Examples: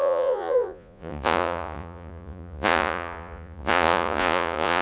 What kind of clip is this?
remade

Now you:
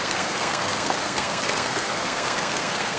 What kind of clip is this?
remade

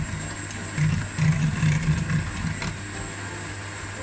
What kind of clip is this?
recorded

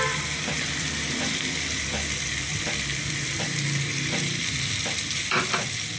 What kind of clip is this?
remade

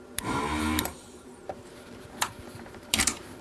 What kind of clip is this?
remade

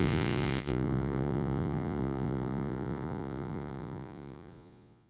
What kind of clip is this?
remade